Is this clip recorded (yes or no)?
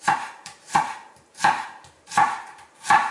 no